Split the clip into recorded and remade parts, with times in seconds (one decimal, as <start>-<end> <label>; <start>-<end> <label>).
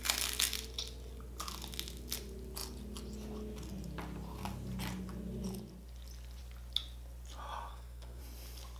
0.0-7.7 recorded; 7.7-8.2 remade; 8.2-8.8 recorded